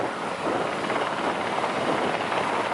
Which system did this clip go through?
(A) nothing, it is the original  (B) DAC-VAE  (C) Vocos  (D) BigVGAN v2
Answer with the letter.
A